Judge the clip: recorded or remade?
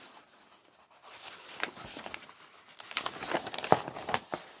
remade